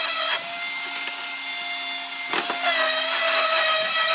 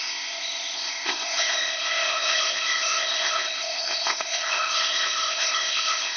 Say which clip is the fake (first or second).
second